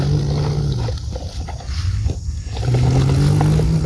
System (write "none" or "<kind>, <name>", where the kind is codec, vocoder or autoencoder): none